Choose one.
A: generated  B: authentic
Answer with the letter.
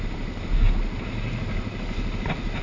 B